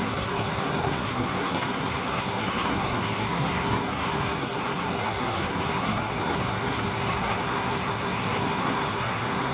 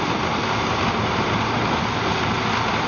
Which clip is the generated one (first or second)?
first